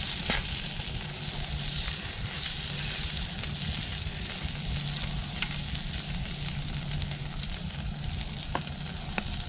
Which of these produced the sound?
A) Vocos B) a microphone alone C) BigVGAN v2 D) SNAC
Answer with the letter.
B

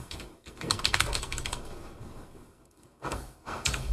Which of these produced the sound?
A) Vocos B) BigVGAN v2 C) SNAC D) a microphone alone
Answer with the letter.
C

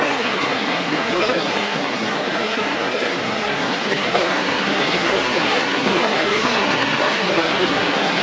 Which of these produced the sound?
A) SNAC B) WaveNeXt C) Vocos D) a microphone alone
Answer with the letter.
A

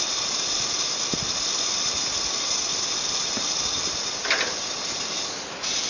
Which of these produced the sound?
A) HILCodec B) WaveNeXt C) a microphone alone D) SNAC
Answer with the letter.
C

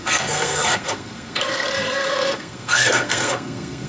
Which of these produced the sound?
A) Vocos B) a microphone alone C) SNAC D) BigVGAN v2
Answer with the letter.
C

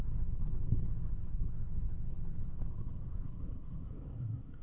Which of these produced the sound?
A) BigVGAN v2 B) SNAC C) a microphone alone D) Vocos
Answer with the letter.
B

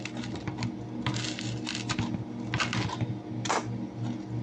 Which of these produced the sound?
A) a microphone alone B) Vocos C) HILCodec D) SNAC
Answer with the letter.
A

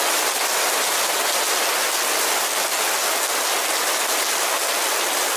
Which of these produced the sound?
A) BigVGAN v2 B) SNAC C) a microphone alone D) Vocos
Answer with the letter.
C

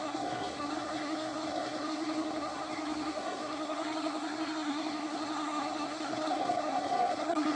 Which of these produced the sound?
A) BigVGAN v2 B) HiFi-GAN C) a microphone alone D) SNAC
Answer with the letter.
D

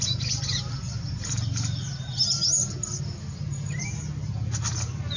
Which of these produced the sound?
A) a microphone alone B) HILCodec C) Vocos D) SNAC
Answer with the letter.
A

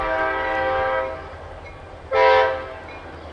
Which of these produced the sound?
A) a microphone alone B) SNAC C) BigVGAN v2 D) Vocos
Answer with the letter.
A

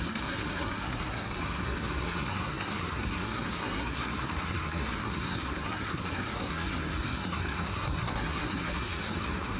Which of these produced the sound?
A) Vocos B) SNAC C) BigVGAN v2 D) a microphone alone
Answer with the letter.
B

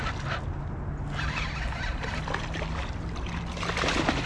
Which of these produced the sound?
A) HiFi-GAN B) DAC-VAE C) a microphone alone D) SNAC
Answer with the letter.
C